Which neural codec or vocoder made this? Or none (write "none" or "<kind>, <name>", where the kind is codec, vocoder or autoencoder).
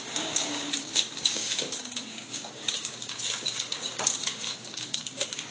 codec, DAC